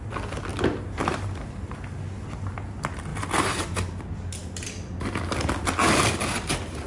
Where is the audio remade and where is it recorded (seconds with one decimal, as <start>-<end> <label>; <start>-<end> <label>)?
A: 0.0-0.5 recorded; 0.5-1.7 remade; 1.7-3.1 recorded; 3.1-4.0 remade; 4.0-6.9 recorded